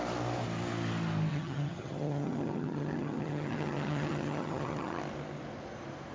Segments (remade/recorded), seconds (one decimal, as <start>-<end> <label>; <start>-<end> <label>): 0.0-1.3 recorded; 1.3-5.0 remade; 5.0-6.1 recorded